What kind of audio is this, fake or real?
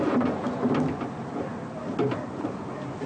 real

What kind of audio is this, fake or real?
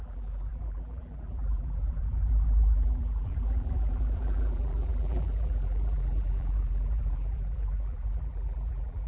fake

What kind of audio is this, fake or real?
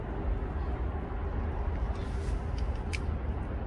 real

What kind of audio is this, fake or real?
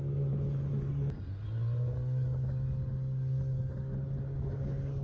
real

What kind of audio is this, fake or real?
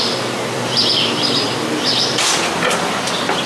fake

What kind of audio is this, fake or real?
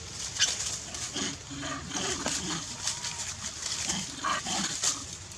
real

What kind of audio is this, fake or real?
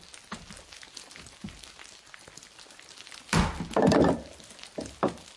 real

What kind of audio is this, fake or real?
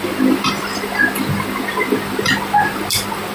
real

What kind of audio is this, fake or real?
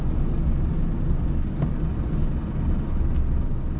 real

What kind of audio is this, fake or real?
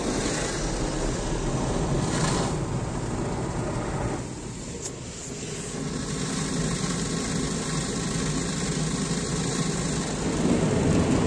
real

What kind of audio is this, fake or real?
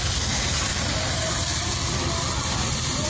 real